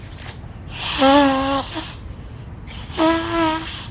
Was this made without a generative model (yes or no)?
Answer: yes